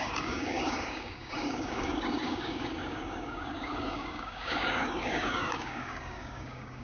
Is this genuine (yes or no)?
no